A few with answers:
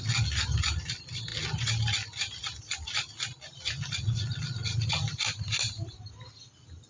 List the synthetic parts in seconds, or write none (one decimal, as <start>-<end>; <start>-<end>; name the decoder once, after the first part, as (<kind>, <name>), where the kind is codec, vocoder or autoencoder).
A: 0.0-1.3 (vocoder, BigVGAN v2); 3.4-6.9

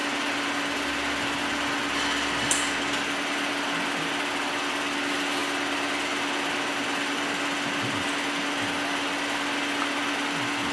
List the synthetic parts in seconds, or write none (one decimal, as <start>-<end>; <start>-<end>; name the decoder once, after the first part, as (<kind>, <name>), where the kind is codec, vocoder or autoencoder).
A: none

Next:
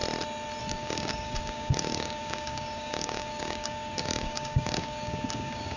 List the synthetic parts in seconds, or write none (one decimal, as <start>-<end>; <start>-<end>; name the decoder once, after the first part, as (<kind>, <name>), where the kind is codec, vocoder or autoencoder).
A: 0.6-5.8 (codec, DAC)

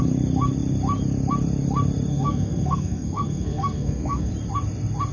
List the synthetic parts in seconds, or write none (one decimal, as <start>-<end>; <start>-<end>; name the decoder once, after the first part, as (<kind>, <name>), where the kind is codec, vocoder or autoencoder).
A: 2.1-4.3 (codec, SNAC)